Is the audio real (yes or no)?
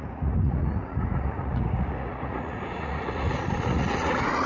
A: no